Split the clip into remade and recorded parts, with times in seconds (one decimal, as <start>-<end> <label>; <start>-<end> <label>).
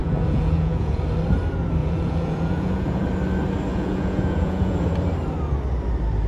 0.0-1.0 remade; 1.0-1.8 recorded; 1.8-3.0 remade; 3.0-3.7 recorded; 3.7-4.9 remade; 4.9-6.3 recorded